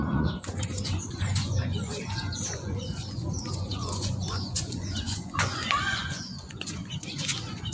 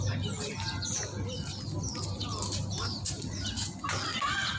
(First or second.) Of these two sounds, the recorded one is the second